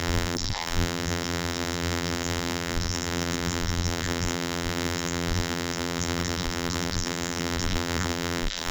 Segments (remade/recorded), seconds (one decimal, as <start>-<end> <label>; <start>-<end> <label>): 0.0-8.7 remade